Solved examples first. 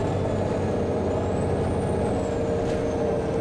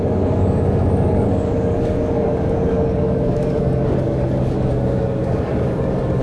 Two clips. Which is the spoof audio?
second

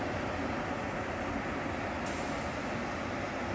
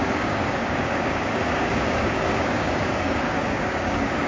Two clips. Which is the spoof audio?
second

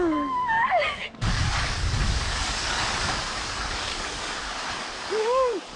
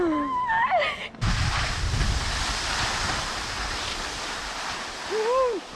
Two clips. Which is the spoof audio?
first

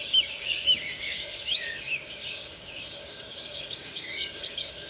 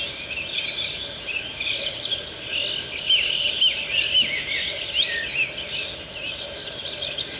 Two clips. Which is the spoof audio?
first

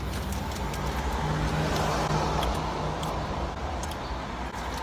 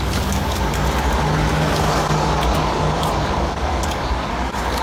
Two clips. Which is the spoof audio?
second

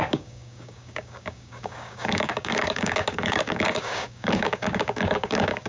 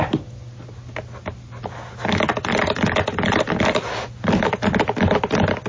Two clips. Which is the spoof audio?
first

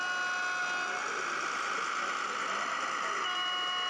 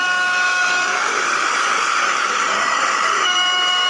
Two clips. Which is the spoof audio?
second